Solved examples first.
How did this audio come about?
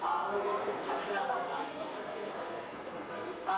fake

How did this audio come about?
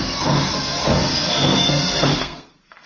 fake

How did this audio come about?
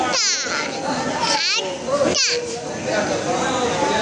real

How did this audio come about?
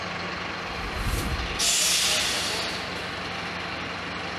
real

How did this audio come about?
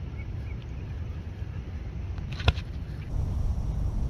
real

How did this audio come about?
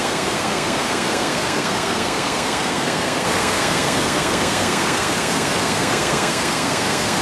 fake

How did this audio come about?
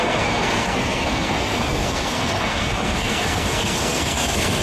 fake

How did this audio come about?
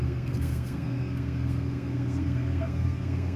fake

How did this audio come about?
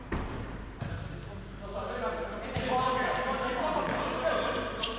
real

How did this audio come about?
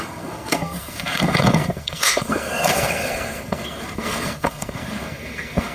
fake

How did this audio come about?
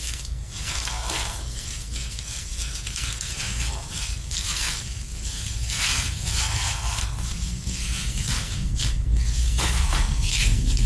fake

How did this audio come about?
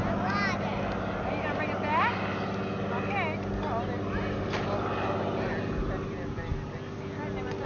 real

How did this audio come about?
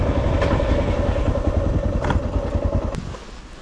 real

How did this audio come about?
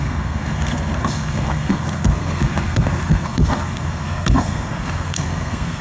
fake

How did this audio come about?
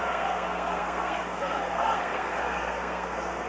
fake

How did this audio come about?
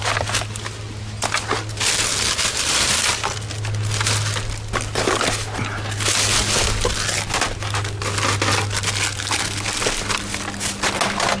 real